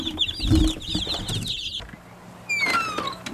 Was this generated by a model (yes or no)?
no